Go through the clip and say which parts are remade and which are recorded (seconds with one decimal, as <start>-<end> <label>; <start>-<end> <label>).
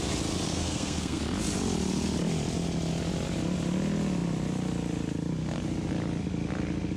0.0-0.5 recorded; 0.5-1.2 remade; 1.2-7.0 recorded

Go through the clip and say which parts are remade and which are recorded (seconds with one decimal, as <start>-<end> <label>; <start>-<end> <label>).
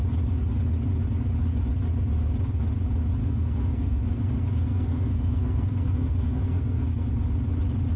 0.0-3.2 recorded; 3.2-7.1 remade; 7.1-8.0 recorded